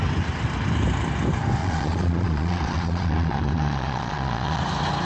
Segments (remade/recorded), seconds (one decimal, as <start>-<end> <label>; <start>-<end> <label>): 0.0-1.6 recorded; 1.6-4.6 remade; 4.6-5.0 recorded